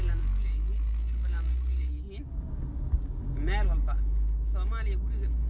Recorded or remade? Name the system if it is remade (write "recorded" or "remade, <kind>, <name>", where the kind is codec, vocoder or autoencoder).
recorded